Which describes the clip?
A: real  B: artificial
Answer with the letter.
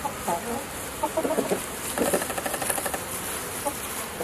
A